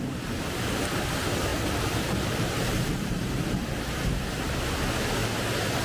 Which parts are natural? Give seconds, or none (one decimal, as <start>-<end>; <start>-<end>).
0.0-1.5; 4.6-5.8